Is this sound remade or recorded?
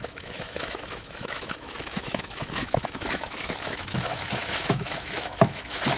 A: remade